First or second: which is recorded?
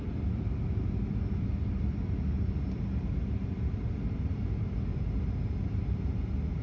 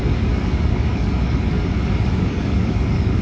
first